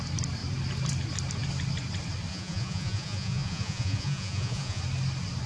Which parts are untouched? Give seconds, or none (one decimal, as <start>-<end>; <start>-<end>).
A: 0.0-2.3; 4.8-5.5